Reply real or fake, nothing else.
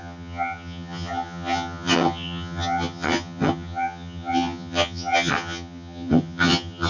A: fake